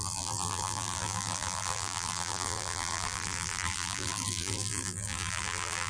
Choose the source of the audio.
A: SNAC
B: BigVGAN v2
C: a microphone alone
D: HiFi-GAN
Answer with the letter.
B